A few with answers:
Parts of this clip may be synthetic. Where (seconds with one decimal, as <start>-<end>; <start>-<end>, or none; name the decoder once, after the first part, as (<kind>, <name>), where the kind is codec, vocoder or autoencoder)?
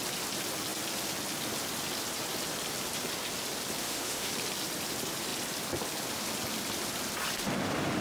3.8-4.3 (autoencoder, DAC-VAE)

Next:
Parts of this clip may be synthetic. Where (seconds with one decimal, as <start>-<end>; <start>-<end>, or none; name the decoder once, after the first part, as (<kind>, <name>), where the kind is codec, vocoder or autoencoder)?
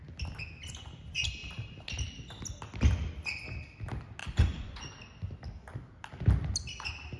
4.2-4.8 (vocoder, Vocos)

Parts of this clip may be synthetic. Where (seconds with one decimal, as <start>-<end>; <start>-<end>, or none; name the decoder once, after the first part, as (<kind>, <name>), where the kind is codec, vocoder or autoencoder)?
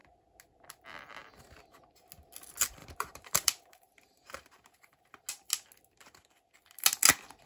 2.8-5.3 (vocoder, BigVGAN v2)